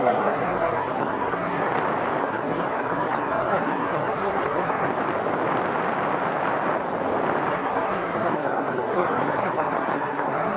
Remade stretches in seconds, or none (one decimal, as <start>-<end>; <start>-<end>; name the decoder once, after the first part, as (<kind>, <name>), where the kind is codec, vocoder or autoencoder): 0.0-1.7 (codec, SNAC); 2.2-4.9; 7.5-10.6